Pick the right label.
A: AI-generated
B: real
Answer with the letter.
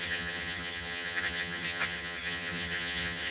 A